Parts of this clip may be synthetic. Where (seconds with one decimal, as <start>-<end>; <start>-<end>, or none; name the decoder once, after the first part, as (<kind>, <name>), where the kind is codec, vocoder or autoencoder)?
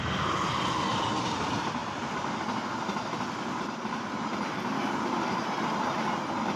none